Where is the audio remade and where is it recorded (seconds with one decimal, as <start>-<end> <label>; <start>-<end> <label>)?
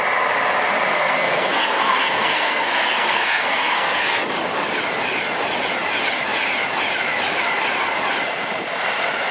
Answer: 0.0-0.9 recorded; 0.9-4.2 remade; 4.2-9.3 recorded